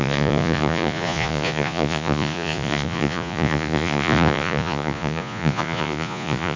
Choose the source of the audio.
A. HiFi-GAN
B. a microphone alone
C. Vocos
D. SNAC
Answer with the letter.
C